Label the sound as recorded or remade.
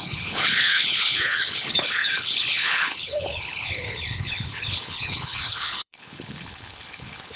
remade